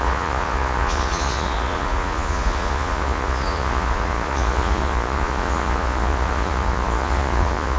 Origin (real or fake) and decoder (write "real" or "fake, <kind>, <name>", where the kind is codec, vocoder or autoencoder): fake, vocoder, Vocos